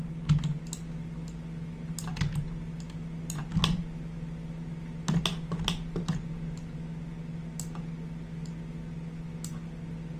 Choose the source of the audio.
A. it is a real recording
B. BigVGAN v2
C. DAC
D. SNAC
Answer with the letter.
A